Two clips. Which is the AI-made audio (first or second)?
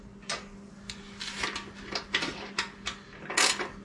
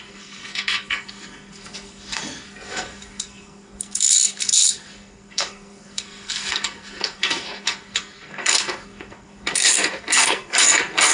second